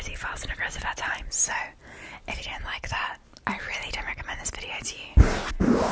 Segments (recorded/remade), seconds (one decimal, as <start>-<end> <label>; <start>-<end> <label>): 0.0-5.9 recorded